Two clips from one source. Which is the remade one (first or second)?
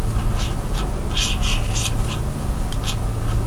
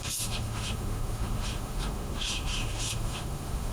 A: second